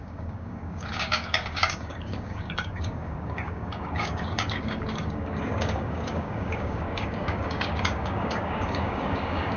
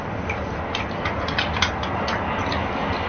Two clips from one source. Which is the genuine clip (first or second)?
second